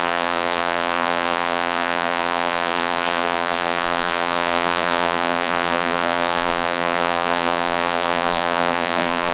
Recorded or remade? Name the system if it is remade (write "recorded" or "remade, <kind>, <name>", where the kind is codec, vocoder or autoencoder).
remade, vocoder, BigVGAN v2